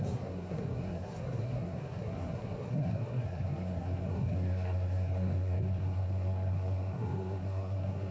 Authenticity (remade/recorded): remade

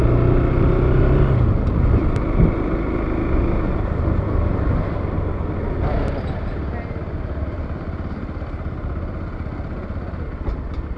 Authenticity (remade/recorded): recorded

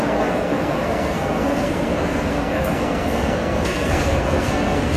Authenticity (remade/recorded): remade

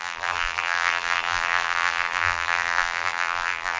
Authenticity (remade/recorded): remade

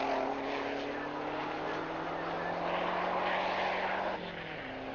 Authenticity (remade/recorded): recorded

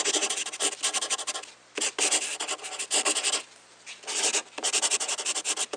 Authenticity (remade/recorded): recorded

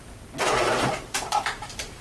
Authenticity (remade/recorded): remade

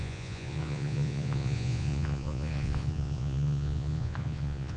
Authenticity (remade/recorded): remade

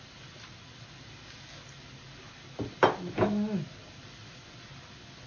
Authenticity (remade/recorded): recorded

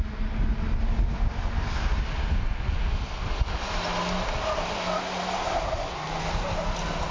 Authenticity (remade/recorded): recorded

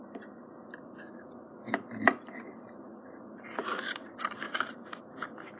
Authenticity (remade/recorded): remade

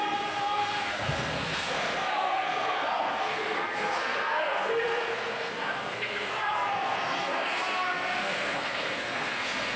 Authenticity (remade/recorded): remade